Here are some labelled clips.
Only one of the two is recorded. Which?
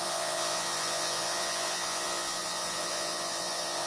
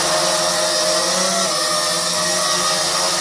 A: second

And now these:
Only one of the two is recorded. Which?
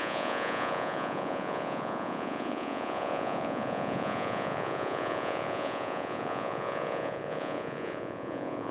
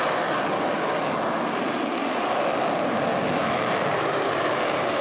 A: second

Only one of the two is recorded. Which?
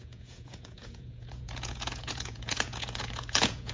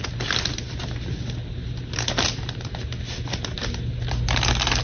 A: second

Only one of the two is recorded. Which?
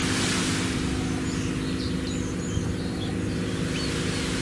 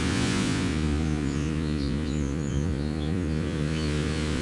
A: first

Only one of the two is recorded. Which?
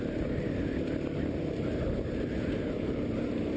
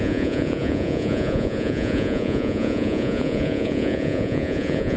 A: first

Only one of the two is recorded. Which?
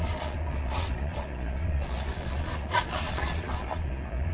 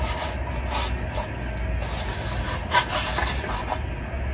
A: second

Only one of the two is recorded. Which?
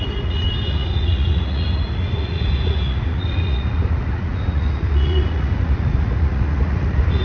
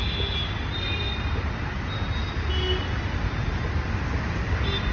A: second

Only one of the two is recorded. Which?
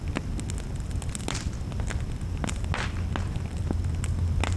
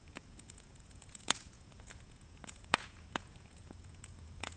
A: first